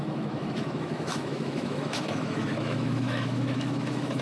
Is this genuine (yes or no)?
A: no